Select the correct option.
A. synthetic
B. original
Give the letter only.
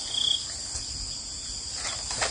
B